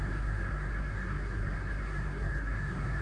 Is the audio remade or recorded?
remade